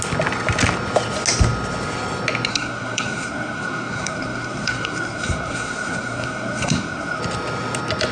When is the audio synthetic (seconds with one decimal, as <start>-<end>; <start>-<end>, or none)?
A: 2.5-7.2